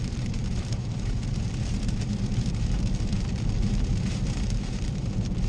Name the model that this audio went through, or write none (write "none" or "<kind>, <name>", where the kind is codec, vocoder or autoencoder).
vocoder, BigVGAN v2